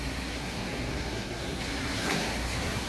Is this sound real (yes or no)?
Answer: no